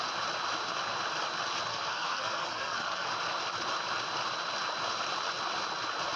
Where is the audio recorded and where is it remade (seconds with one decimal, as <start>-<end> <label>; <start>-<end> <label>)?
0.0-1.7 recorded; 1.7-3.1 remade; 3.1-6.2 recorded

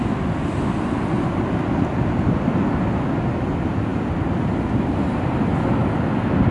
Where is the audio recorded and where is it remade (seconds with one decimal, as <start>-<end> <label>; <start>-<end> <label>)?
0.0-6.5 recorded